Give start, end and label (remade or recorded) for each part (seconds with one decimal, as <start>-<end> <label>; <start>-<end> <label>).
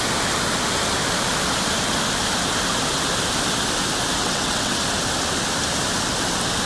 0.0-4.2 recorded; 4.2-4.8 remade; 4.8-6.7 recorded